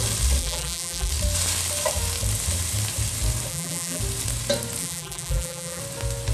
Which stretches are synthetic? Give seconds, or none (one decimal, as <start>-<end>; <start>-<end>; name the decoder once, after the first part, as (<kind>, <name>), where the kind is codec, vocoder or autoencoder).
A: 0.4-1.1 (vocoder, BigVGAN v2); 3.5-4.0; 4.8-5.8